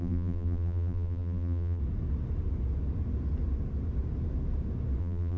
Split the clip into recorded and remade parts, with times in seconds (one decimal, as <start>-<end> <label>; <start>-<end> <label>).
0.0-1.8 remade; 1.8-5.0 recorded; 5.0-5.4 remade